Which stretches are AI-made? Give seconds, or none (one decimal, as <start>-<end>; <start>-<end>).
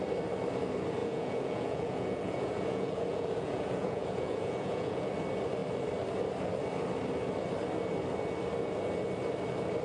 1.0-5.1